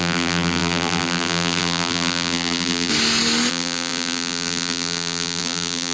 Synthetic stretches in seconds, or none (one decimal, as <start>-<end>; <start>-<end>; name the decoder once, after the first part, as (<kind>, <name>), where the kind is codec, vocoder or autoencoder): 0.0-2.9 (vocoder, BigVGAN v2); 3.5-5.9